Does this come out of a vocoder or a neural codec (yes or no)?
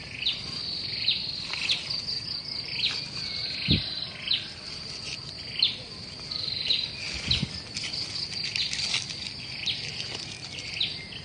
no